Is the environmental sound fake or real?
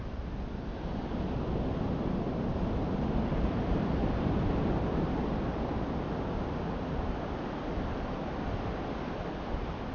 real